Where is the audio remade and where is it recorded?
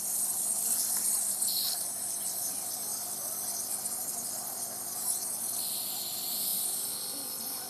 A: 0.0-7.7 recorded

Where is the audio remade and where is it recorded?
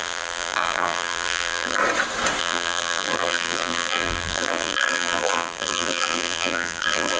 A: 0.0-1.8 remade; 1.8-2.4 recorded; 2.4-7.2 remade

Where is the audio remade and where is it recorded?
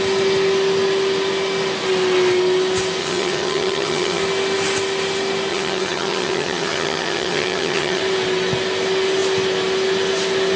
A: 0.0-3.0 recorded; 3.0-4.2 remade; 4.2-5.5 recorded; 5.5-8.0 remade; 8.0-10.6 recorded